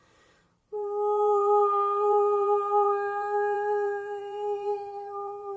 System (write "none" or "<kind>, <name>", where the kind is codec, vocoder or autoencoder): vocoder, BigVGAN v2